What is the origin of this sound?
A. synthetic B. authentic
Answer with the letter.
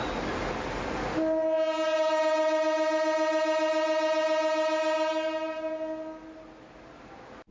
B